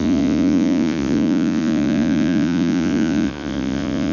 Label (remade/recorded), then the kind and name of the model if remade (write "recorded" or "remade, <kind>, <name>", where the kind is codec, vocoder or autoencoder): remade, vocoder, Vocos